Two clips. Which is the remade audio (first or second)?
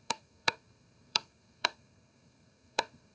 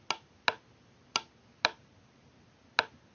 first